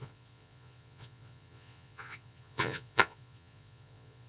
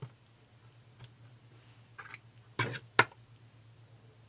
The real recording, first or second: second